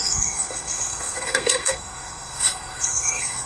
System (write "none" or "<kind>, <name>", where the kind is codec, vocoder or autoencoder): codec, SNAC